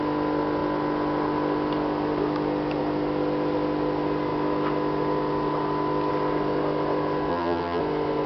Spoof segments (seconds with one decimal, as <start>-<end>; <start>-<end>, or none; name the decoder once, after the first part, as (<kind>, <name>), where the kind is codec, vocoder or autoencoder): 7.3-7.8 (vocoder, BigVGAN v2)